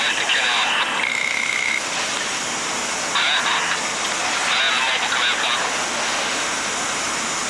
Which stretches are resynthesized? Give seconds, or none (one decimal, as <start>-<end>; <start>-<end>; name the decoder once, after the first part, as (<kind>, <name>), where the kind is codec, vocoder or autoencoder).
1.1-1.8 (autoencoder, DAC-VAE)